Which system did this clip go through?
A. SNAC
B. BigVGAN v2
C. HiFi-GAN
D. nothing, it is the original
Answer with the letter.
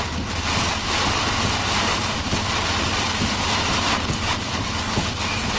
B